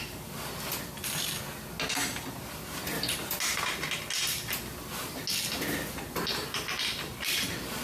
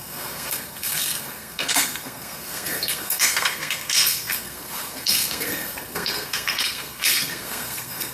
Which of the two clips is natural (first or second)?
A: first